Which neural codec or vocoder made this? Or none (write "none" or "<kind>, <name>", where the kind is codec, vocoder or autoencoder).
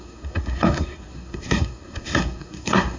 codec, SNAC